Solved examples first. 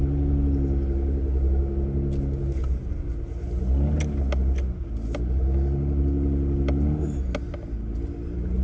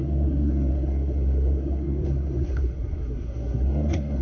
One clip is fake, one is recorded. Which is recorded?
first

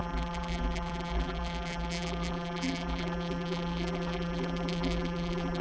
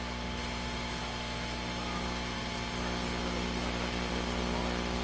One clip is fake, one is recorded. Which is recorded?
second